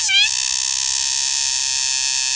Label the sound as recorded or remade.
recorded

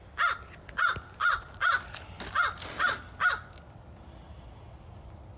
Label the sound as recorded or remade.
recorded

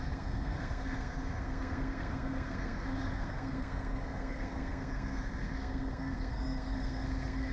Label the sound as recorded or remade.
remade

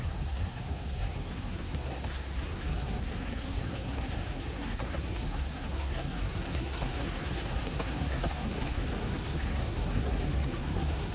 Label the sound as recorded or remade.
remade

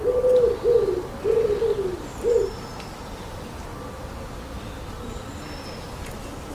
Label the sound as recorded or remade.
recorded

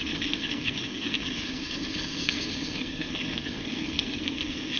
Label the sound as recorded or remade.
remade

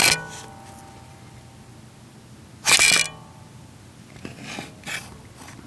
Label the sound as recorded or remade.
recorded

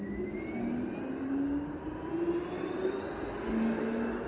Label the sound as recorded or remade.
recorded